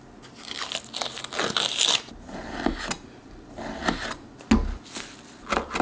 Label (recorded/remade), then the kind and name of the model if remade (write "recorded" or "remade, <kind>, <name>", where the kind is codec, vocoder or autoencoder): recorded